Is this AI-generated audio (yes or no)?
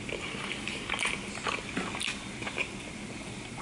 no